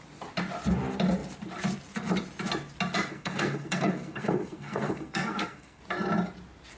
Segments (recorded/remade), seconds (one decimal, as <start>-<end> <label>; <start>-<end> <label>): 0.0-3.1 recorded; 3.1-5.8 remade; 5.8-6.8 recorded